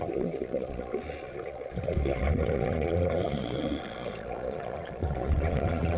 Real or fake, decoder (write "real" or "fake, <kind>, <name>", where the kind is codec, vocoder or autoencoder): fake, vocoder, Vocos